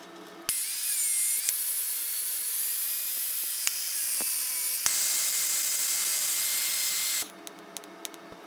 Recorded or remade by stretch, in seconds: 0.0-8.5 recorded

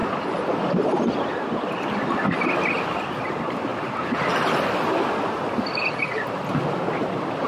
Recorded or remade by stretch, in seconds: 0.0-2.4 remade; 2.4-3.7 recorded; 3.7-6.0 remade; 6.0-7.5 recorded